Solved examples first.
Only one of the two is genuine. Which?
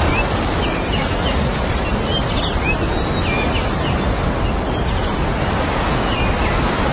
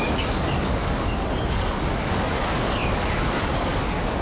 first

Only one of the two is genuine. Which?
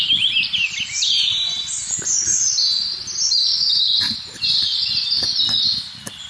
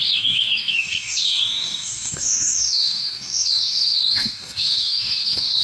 first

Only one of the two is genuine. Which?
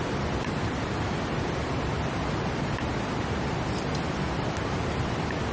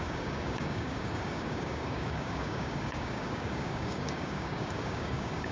first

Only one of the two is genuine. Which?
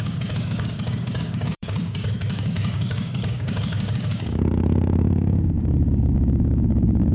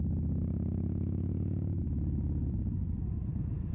second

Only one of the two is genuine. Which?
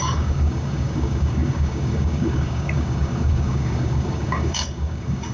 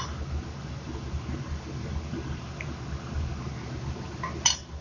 second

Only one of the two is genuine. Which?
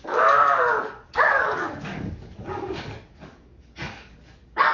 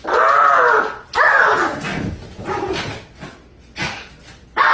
second